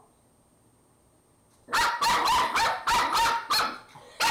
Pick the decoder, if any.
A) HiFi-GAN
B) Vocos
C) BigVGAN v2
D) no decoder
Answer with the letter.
D